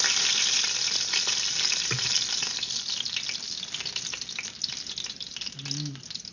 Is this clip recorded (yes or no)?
yes